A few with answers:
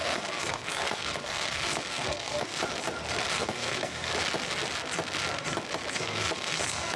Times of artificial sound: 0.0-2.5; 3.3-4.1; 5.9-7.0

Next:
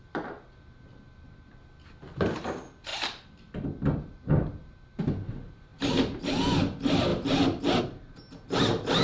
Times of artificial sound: none

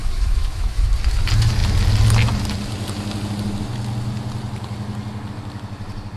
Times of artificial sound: 0.0-0.9

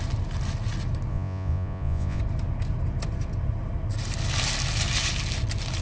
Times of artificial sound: 1.1-2.2

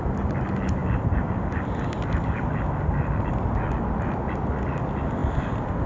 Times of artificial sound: 0.8-3.3

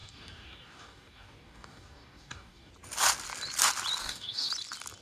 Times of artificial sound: 0.0-2.7; 4.0-4.5

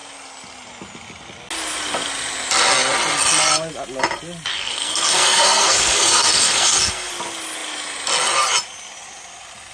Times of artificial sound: 4.5-7.1

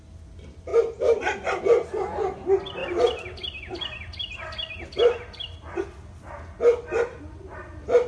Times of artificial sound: none